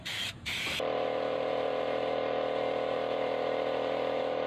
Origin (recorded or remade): remade